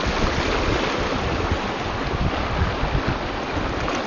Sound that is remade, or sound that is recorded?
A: recorded